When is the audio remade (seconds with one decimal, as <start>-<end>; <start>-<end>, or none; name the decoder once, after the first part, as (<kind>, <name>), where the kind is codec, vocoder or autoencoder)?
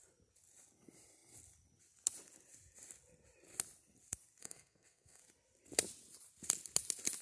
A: 4.4-5.2 (codec, SNAC)